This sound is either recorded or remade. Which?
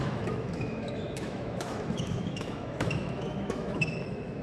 remade